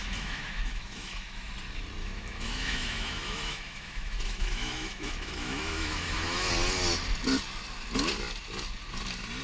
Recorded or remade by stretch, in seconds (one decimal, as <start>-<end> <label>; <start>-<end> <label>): 0.0-1.5 remade; 1.5-2.0 recorded; 2.0-6.5 remade; 6.5-9.4 recorded